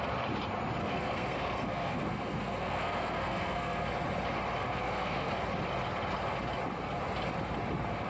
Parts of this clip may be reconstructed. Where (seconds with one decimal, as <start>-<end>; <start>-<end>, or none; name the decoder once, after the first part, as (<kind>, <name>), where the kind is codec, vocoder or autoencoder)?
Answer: 0.8-3.9 (codec, SNAC); 4.6-5.3